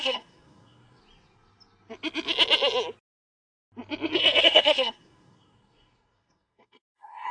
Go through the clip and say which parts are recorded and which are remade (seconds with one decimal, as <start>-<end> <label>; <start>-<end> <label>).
0.0-1.0 remade; 1.0-4.4 recorded; 4.4-7.3 remade